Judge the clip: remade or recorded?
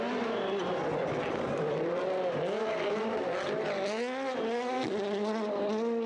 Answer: recorded